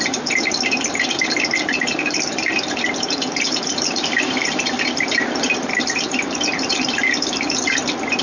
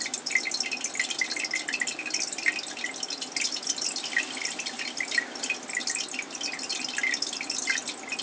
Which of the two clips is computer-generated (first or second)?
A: first